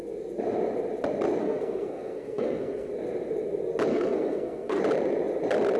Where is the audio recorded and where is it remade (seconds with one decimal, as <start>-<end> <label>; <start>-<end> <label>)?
0.0-1.4 recorded; 1.4-2.9 remade; 2.9-3.9 recorded; 3.9-4.8 remade; 4.8-5.8 recorded